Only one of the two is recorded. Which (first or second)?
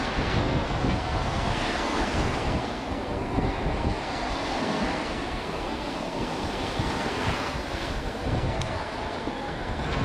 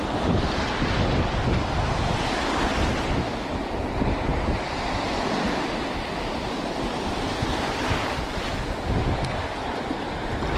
second